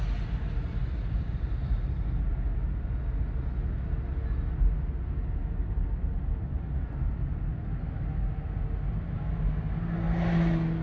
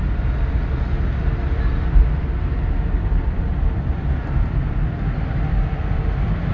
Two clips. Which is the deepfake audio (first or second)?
second